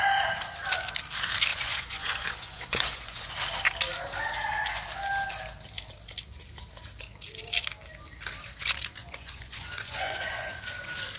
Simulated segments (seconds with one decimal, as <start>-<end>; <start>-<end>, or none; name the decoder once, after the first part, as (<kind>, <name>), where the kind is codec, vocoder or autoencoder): 1.5-3.3 (vocoder, Vocos); 9.0-10.5